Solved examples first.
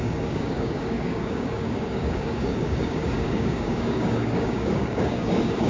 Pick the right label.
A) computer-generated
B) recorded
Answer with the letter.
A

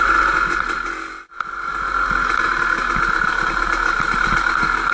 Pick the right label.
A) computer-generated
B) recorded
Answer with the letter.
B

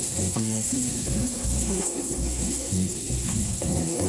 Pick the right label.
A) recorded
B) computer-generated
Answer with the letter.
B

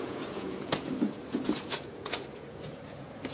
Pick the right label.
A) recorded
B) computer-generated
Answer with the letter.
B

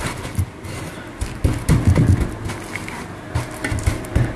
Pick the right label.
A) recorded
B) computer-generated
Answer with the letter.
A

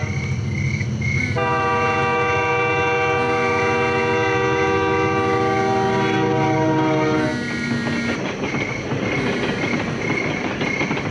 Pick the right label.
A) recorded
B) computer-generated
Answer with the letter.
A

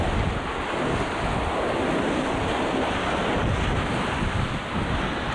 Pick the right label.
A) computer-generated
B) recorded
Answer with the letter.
B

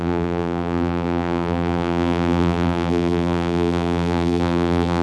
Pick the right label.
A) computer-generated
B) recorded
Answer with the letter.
A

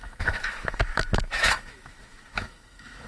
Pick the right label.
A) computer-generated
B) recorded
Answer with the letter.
A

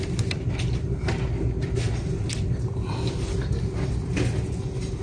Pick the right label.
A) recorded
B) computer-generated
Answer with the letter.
A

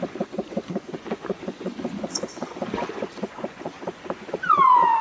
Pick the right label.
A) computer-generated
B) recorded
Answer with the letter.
A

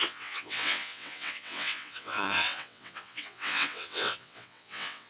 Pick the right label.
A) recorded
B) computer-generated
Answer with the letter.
B